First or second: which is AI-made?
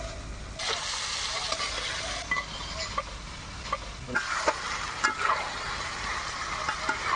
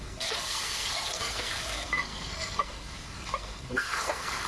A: second